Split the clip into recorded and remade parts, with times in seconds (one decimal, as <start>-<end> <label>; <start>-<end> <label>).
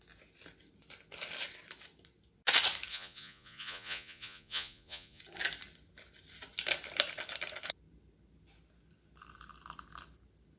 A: 0.0-2.9 recorded; 2.9-5.2 remade; 5.2-10.6 recorded